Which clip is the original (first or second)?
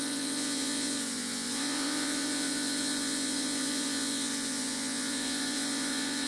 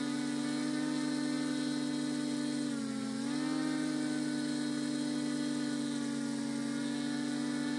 second